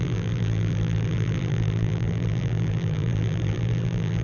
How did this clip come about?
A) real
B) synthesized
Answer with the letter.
B